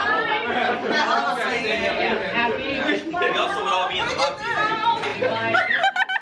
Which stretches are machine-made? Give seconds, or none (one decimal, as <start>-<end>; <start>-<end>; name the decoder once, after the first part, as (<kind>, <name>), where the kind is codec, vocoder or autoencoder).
none